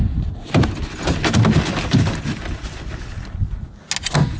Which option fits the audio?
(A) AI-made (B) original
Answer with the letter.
B